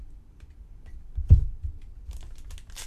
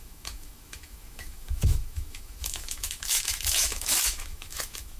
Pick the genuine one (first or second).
first